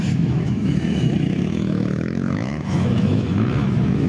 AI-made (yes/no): yes